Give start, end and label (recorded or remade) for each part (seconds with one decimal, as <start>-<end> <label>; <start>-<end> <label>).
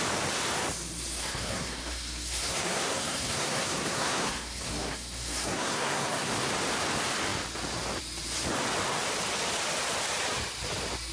0.0-1.2 recorded; 1.2-6.3 remade; 6.3-11.1 recorded